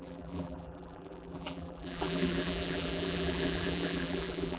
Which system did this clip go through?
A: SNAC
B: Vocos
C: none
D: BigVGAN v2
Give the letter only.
D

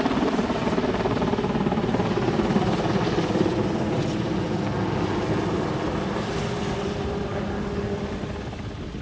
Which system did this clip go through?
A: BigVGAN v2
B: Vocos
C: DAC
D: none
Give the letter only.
D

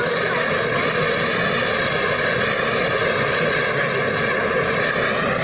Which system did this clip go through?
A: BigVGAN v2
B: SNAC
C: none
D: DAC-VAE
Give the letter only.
C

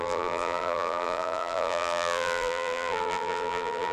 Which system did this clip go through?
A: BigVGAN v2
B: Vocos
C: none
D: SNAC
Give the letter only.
A